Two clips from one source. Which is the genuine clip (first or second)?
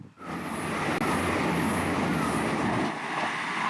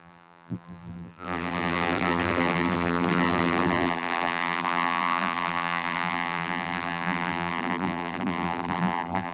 first